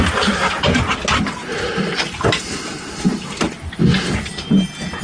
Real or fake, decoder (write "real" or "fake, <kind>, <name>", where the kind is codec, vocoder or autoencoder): real